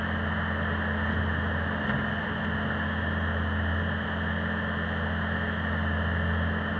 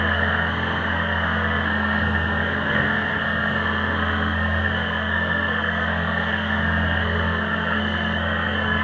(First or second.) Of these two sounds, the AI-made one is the second